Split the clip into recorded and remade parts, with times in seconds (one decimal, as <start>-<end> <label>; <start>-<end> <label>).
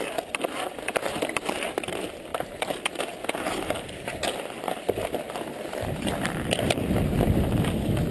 0.0-2.3 recorded; 2.3-2.8 remade; 2.8-3.2 recorded; 3.2-6.9 remade; 6.9-8.1 recorded